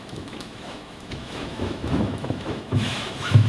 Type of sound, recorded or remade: remade